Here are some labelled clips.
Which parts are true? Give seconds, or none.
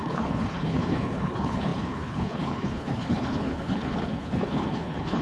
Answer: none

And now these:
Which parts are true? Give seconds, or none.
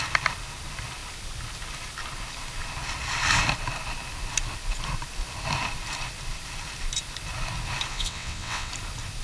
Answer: 0.0-7.9; 8.7-9.2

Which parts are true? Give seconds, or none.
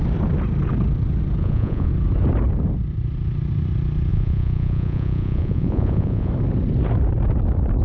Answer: 0.0-1.4; 1.9-4.1; 6.3-7.8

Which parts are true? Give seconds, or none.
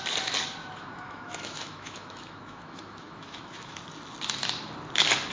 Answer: 0.0-0.6; 3.8-5.3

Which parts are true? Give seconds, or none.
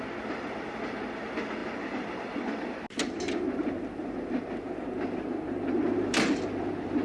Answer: 0.0-7.0